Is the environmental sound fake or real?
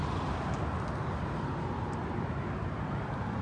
real